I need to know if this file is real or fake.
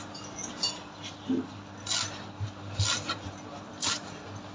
real